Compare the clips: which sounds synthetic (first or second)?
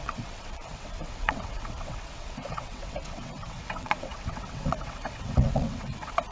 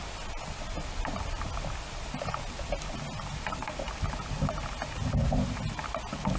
first